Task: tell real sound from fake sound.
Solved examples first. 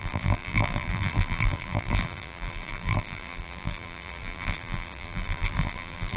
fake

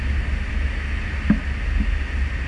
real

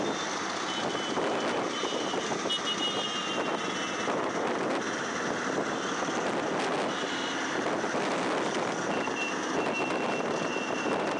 real